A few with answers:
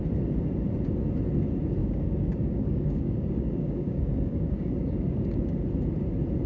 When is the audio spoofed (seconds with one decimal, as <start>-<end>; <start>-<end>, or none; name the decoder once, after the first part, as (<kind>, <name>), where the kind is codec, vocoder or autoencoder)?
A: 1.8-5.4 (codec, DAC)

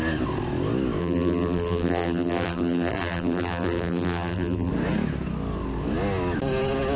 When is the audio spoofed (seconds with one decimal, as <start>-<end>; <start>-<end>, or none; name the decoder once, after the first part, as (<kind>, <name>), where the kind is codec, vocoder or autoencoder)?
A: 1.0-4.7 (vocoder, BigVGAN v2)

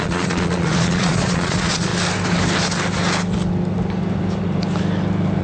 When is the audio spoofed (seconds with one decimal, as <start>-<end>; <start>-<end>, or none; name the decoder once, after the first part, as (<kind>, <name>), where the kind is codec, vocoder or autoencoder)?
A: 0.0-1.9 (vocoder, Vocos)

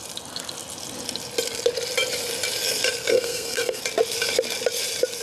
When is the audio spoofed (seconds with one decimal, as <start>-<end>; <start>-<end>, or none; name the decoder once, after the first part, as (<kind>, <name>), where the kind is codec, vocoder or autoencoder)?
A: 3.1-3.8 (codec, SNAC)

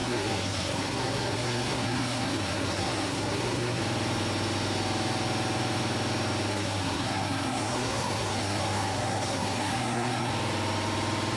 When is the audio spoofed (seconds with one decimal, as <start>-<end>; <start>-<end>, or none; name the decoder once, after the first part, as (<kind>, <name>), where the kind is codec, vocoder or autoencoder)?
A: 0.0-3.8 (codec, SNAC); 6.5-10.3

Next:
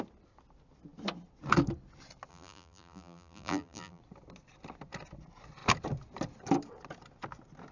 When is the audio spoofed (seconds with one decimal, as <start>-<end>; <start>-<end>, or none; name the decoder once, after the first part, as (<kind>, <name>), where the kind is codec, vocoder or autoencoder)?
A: 2.3-4.0 (vocoder, BigVGAN v2)

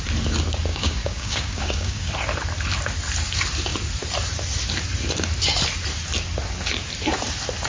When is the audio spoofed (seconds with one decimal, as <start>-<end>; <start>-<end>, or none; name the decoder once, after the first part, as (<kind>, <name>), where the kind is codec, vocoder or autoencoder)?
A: 0.7-2.1 (codec, DAC)

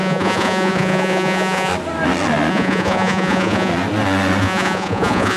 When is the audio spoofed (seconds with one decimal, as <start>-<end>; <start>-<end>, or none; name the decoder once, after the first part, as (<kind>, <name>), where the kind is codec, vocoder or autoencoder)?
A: 0.0-1.7 (vocoder, Vocos); 2.5-3.7; 4.4-5.4